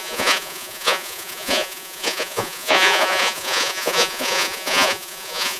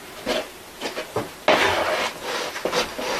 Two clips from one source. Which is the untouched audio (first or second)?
second